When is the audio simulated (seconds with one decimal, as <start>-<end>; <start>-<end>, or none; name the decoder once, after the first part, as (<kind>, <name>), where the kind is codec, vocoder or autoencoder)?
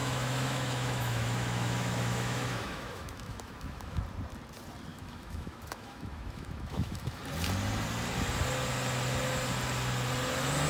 0.0-4.0 (autoencoder, DAC-VAE); 4.9-7.2